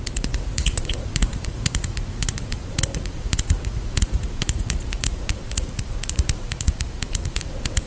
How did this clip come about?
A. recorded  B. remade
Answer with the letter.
B